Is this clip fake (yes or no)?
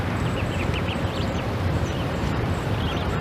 yes